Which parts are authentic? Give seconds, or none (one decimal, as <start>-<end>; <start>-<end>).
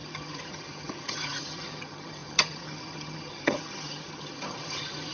none